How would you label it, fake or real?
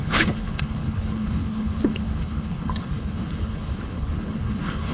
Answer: fake